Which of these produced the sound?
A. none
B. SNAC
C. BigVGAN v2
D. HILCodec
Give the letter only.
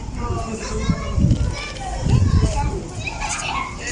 A